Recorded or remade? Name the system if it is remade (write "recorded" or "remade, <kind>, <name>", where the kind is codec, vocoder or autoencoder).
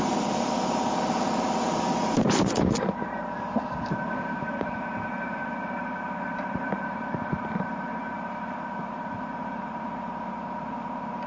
remade, vocoder, BigVGAN v2